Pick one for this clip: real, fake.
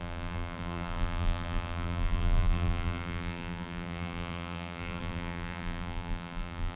fake